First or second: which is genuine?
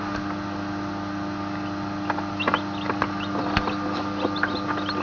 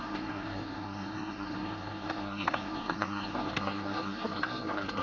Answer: first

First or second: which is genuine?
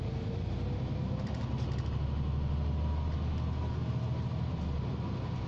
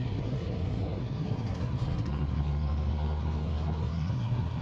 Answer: first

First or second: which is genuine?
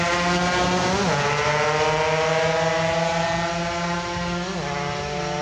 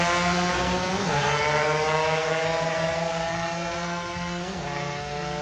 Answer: first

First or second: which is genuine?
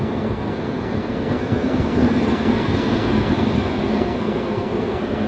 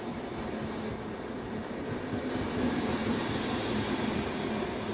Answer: second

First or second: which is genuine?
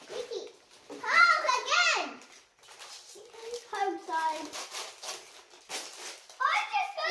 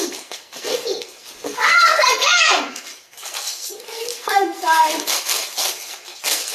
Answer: first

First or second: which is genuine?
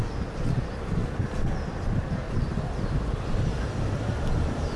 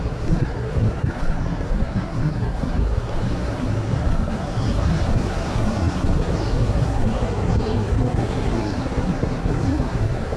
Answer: first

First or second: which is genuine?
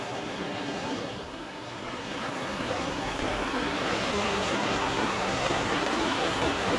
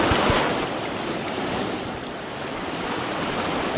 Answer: second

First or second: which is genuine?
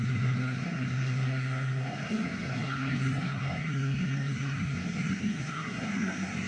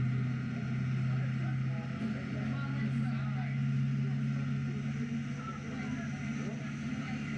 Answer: second